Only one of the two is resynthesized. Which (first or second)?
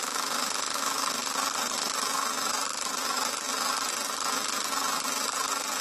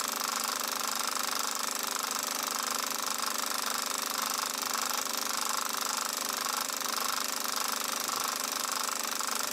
first